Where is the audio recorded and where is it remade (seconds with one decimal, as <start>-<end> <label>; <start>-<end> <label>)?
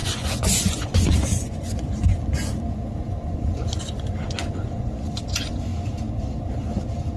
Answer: 0.0-5.7 remade; 5.7-7.2 recorded